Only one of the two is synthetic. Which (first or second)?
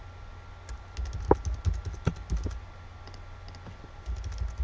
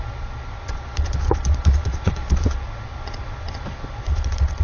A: second